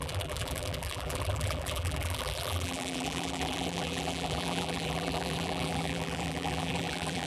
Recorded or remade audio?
remade